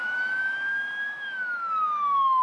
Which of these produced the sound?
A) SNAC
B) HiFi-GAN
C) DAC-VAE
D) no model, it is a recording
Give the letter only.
C